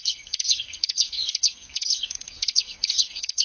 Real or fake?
fake